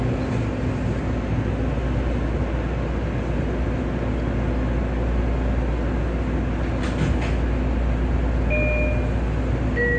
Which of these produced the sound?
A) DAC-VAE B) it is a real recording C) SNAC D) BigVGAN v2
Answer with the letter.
B